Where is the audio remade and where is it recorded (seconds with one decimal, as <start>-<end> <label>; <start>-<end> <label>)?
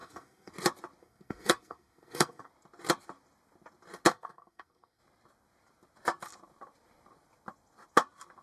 0.0-0.5 remade; 0.5-1.0 recorded; 1.0-2.5 remade; 2.5-4.1 recorded; 4.1-5.0 remade; 5.0-8.4 recorded